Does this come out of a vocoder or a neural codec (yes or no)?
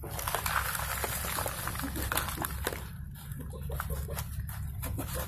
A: no